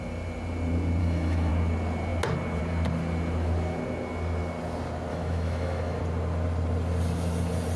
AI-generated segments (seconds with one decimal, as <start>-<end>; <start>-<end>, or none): 1.0-1.5; 5.1-6.0